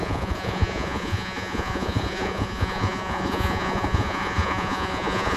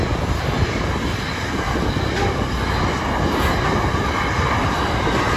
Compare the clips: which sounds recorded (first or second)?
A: second